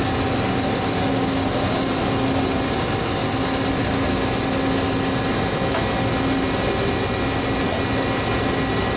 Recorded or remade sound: recorded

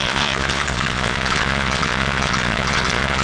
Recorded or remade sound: remade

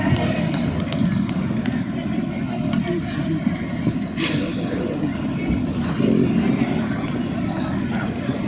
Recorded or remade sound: recorded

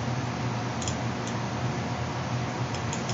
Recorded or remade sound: recorded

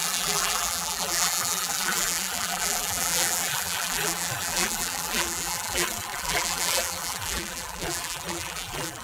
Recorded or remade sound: remade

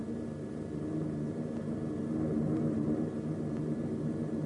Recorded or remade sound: recorded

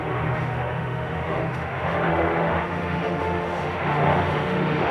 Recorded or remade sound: remade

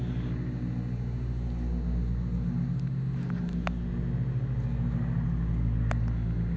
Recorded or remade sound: recorded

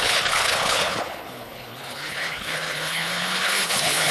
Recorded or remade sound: remade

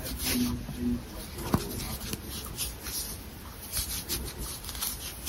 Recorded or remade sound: recorded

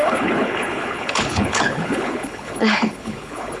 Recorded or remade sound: remade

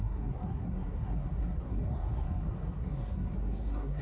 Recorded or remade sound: remade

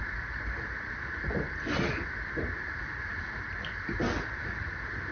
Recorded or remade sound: recorded